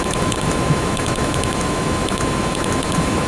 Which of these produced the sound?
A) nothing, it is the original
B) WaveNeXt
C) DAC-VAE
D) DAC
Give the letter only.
C